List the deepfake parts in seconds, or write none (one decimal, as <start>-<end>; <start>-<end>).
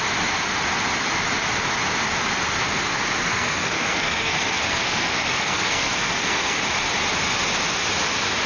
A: 3.3-6.6